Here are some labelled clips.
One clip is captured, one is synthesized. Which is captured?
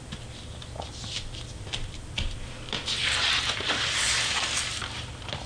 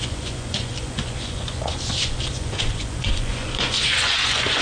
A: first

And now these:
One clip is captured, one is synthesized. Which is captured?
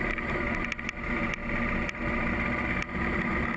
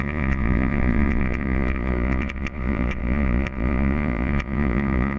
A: first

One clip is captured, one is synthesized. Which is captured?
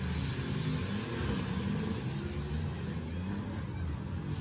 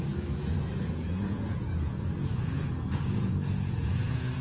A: first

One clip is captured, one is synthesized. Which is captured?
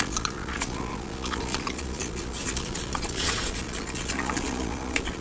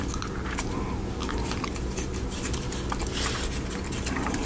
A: second